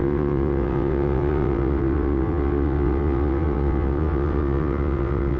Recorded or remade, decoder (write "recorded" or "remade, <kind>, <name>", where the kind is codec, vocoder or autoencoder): remade, vocoder, WaveNeXt